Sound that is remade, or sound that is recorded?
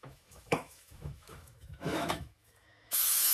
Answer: remade